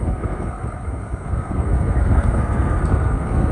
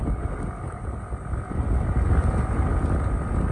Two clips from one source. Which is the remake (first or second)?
first